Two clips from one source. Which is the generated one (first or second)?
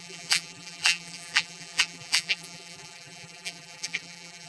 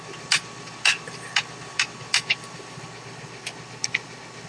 first